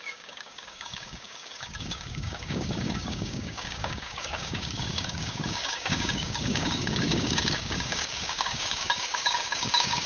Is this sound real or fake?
fake